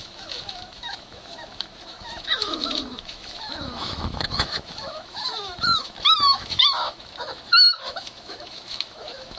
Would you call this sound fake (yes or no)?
yes